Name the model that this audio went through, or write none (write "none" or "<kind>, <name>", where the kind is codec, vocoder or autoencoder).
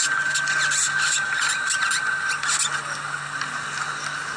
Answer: none